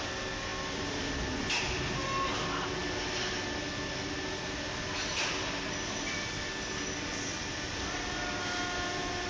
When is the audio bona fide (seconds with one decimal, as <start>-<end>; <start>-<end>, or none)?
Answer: 0.0-9.3